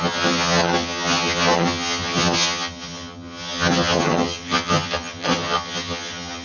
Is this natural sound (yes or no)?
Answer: no